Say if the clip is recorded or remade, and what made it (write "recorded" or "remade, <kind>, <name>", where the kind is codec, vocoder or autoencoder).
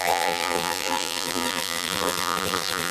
remade, vocoder, BigVGAN v2